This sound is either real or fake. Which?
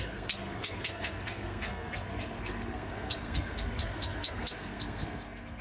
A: fake